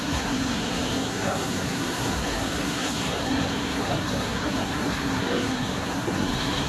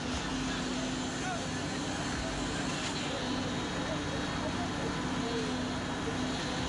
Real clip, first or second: second